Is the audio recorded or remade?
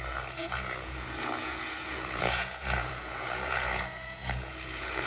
remade